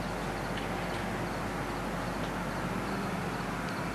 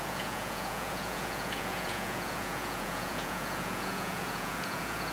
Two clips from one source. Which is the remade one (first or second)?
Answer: second